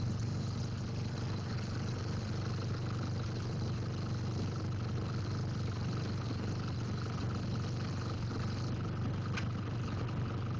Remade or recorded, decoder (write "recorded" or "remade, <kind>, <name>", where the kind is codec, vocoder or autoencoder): recorded